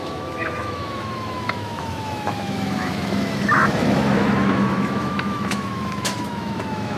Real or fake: fake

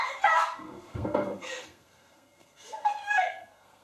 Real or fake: fake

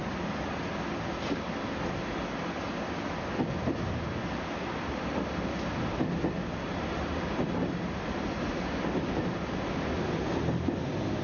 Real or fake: real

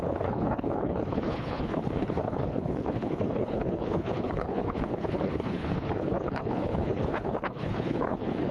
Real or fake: fake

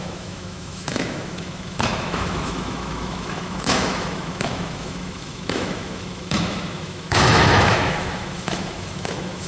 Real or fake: fake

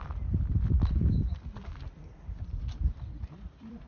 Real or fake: fake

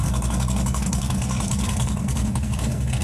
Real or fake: fake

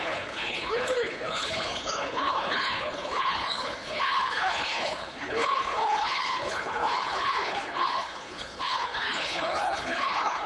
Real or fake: fake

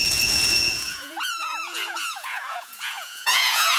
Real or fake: fake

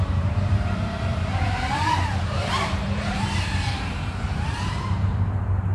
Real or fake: fake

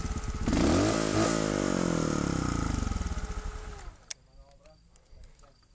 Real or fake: real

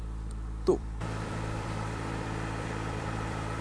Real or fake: fake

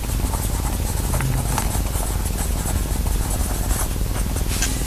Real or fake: real